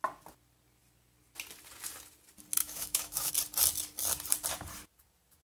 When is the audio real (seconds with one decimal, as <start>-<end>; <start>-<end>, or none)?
0.0-2.6; 3.3-5.4